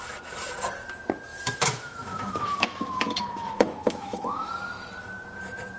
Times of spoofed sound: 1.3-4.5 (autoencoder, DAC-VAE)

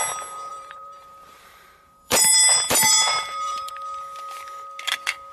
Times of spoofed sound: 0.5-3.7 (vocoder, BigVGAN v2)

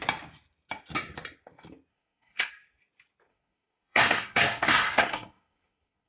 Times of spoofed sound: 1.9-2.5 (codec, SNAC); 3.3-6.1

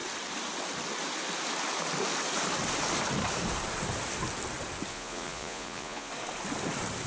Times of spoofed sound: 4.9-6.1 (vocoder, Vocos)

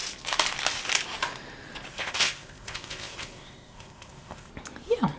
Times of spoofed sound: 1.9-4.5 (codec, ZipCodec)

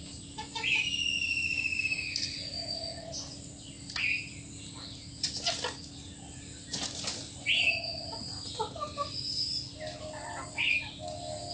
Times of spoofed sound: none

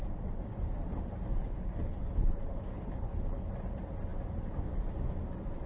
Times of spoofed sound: 1.4-3.5 (codec, HILCodec)